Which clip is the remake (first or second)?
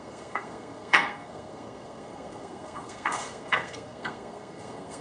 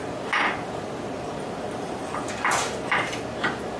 first